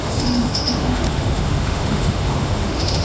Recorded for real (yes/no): no